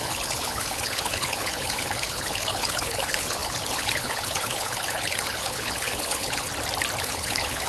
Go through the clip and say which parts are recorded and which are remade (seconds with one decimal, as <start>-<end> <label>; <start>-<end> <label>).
0.0-6.5 remade; 6.5-7.0 recorded; 7.0-7.7 remade